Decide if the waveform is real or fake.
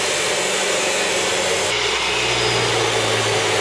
real